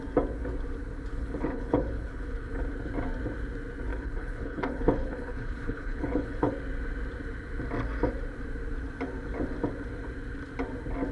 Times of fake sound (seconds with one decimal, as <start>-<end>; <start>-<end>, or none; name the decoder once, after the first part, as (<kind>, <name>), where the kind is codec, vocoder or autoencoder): 1.1-2.5 (codec, HILCodec); 3.9-6.5